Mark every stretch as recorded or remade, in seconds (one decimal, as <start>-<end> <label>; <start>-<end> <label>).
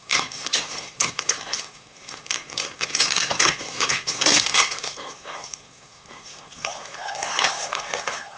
0.0-8.4 remade